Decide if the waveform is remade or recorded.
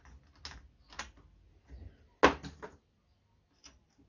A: recorded